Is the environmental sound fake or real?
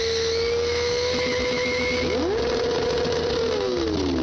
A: real